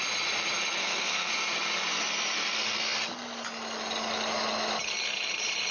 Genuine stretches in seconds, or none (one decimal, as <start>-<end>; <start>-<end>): 0.0-0.8; 1.3-5.7